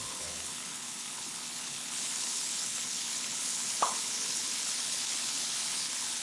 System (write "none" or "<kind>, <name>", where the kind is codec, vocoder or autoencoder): codec, HILCodec